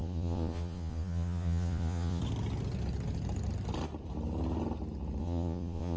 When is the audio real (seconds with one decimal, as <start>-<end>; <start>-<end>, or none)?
2.2-5.2